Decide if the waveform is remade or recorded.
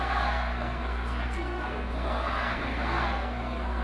remade